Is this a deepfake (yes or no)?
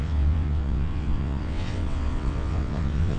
yes